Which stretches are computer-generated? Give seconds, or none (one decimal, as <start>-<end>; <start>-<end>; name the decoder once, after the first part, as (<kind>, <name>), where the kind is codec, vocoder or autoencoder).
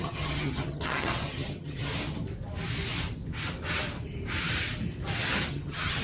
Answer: 0.0-1.9 (vocoder, HiFi-GAN); 5.5-6.0